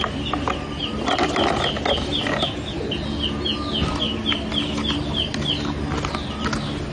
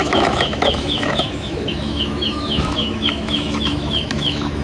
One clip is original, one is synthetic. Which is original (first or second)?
first